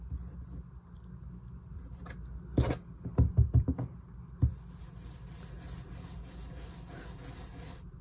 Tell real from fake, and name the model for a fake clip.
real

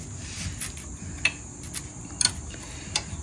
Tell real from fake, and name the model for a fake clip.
real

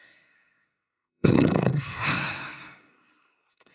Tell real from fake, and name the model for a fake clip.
fake, codec, SNAC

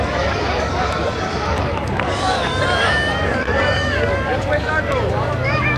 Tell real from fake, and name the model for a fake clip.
fake, codec, DAC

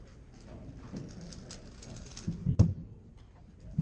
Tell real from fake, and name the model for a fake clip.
real